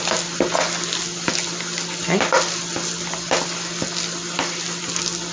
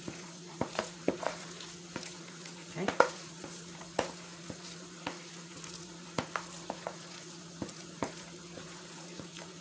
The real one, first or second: first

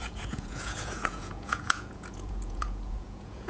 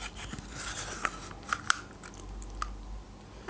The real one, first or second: second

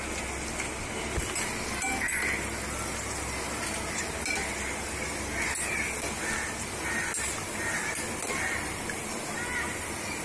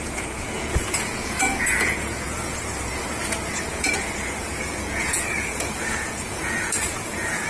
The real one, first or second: first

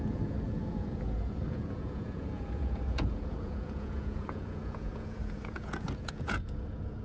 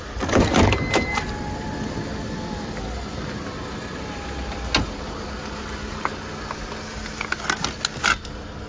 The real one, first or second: second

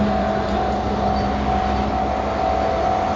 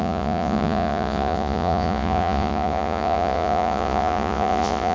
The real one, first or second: first